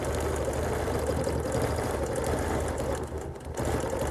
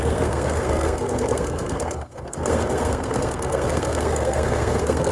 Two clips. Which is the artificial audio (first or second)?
second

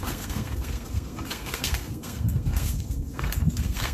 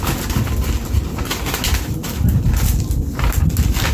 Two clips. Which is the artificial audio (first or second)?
first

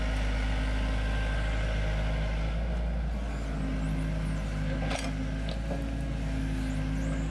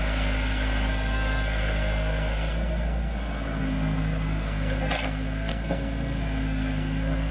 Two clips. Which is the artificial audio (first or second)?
second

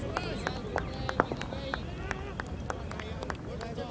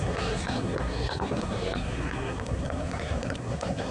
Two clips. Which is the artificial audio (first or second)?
second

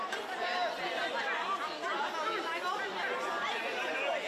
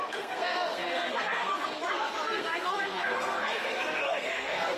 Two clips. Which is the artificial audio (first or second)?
second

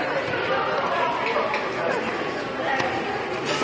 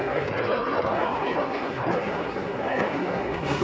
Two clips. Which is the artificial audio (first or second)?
second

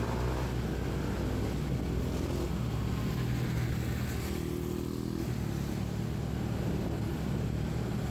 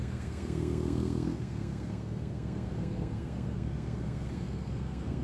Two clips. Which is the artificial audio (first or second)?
second